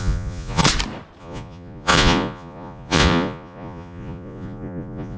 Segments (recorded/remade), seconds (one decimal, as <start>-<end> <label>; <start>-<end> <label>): 0.0-0.6 remade; 0.6-1.2 recorded; 1.2-5.2 remade